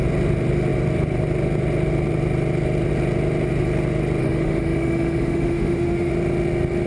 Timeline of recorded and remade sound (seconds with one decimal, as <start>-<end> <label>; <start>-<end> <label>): 0.0-4.2 recorded; 4.2-6.1 remade; 6.1-6.9 recorded